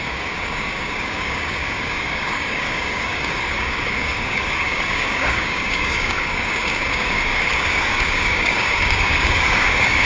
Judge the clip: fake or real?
fake